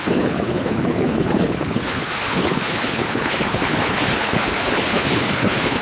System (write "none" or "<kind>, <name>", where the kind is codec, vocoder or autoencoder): codec, HILCodec